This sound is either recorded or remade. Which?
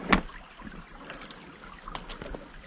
recorded